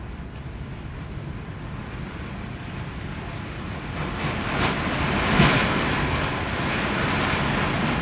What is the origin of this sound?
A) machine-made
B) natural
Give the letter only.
B